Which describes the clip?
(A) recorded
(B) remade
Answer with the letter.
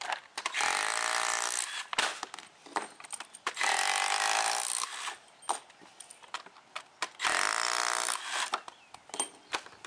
A